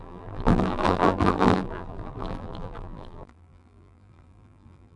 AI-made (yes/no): yes